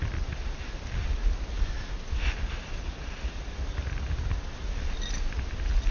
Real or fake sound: real